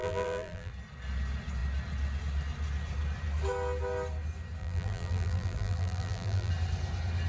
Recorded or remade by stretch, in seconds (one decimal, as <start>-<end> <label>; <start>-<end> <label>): 0.0-0.7 remade; 0.7-4.6 recorded; 4.6-6.5 remade; 6.5-7.3 recorded